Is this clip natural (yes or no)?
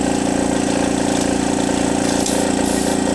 yes